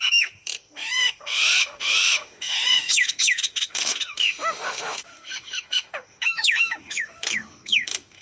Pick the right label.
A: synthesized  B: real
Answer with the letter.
A